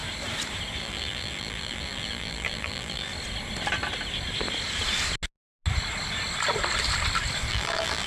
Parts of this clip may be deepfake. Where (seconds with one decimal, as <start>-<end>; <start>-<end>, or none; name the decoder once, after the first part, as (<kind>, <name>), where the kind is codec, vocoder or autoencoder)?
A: 0.8-3.1 (vocoder, BigVGAN v2); 7.5-8.1